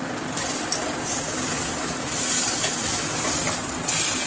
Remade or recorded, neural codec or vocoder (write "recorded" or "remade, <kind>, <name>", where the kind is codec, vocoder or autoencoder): recorded